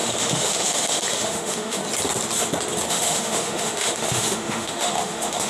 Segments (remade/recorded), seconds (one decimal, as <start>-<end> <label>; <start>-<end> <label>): 0.0-1.8 remade; 1.8-2.9 recorded; 2.9-5.5 remade